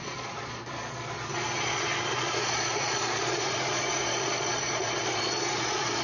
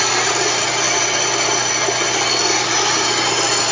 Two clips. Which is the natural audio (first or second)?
second